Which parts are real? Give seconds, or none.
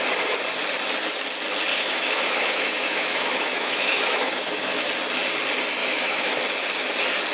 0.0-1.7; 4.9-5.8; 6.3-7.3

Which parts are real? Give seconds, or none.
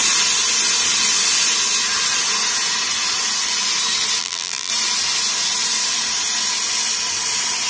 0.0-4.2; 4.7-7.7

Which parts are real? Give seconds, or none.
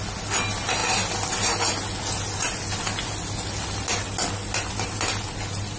0.0-5.8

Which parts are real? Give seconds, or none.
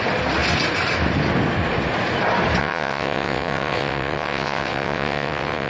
0.0-2.6